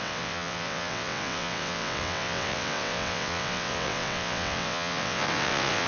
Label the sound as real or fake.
fake